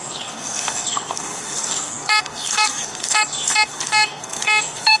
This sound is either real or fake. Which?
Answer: fake